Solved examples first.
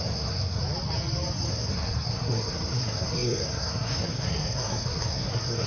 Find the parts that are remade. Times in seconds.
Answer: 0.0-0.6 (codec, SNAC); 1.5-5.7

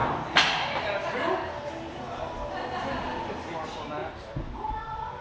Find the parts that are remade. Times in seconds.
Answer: 4.0-4.7 (vocoder, BigVGAN v2)

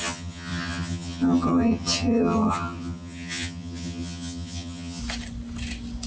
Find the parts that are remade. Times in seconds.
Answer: 0.0-5.0 (vocoder, HiFi-GAN)

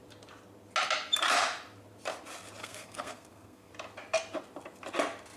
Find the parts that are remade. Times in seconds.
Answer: 2.6-3.7 (codec, SNAC)